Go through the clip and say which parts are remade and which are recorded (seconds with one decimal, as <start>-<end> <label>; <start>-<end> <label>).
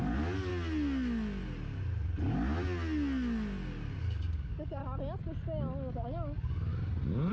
0.0-0.5 remade; 0.5-4.0 recorded; 4.0-4.8 remade; 4.8-5.9 recorded; 5.9-6.7 remade; 6.7-7.3 recorded